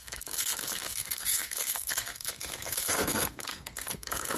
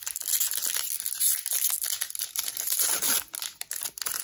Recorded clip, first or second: second